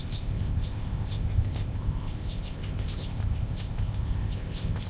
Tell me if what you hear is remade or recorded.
remade